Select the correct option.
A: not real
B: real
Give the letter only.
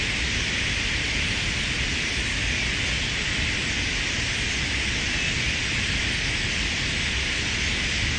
B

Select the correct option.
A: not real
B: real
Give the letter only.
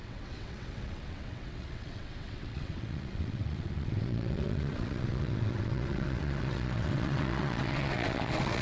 A